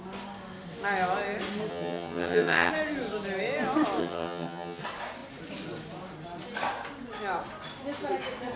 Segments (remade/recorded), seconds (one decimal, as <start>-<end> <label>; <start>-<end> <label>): 0.0-1.7 recorded; 1.7-2.7 remade; 2.7-4.0 recorded; 4.0-4.8 remade; 4.8-8.6 recorded